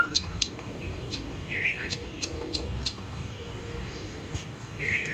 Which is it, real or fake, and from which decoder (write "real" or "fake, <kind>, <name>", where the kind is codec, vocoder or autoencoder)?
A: fake, codec, DAC